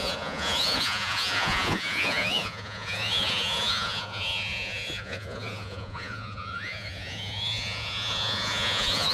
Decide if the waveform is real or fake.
fake